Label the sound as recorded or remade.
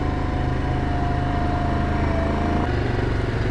recorded